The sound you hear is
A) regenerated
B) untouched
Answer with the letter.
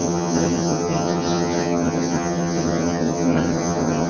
A